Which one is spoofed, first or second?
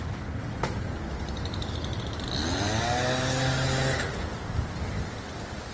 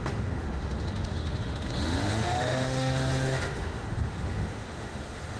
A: second